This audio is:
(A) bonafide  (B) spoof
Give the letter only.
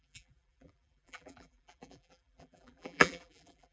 B